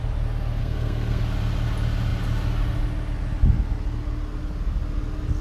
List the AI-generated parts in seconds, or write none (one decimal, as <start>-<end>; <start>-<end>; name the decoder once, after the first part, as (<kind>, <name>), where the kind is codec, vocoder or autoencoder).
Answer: 0.6-1.2 (codec, SNAC)